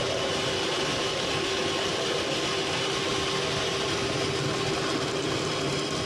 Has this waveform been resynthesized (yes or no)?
no